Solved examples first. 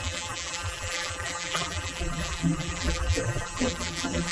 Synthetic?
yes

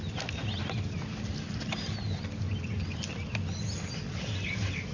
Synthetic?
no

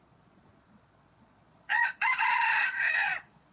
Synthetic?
yes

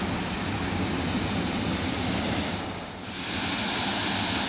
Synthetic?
no